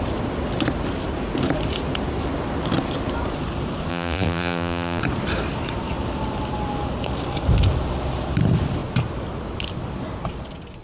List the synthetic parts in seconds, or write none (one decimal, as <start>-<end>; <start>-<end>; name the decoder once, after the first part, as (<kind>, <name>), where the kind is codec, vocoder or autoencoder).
3.9-5.0 (vocoder, BigVGAN v2)